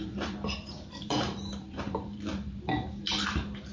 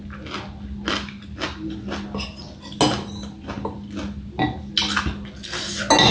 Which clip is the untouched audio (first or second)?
second